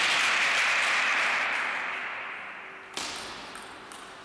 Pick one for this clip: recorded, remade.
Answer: recorded